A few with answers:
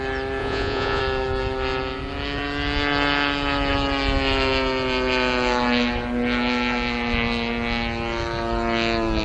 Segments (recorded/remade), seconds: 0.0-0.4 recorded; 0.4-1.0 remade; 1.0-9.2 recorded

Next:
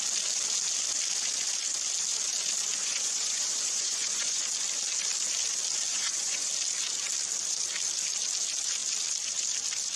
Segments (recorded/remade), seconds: 0.0-2.8 recorded; 2.8-4.4 remade; 4.4-5.9 recorded; 5.9-6.5 remade; 6.5-10.0 recorded

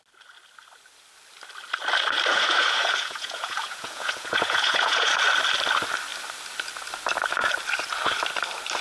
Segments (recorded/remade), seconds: 0.0-2.3 recorded; 2.3-5.1 remade; 5.1-8.8 recorded

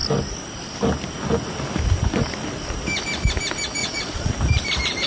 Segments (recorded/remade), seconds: 0.0-3.8 recorded; 3.8-4.3 remade; 4.3-5.1 recorded

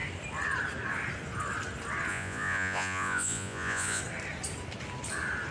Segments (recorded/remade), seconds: 0.0-2.1 recorded; 2.1-4.0 remade; 4.0-5.5 recorded

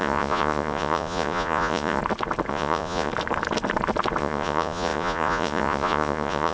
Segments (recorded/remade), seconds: 0.0-2.0 remade; 2.0-2.5 recorded; 2.5-3.1 remade; 3.1-4.2 recorded; 4.2-6.5 remade